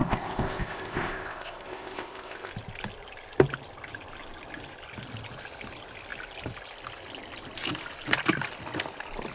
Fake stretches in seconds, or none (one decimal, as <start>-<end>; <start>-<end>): 0.0-2.5